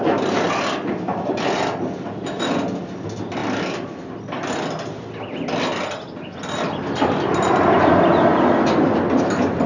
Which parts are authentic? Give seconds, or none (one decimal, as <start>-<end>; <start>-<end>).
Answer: 0.0-1.1; 1.6-8.3; 9.0-9.7